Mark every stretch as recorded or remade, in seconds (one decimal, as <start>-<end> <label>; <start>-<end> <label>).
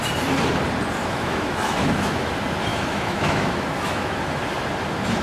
0.0-1.0 recorded; 1.0-2.3 remade; 2.3-2.7 recorded; 2.7-4.4 remade; 4.4-5.2 recorded